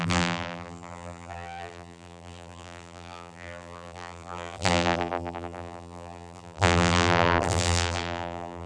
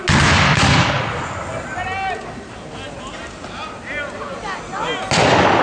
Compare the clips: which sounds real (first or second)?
second